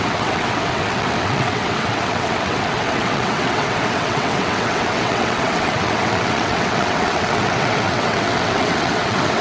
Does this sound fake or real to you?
fake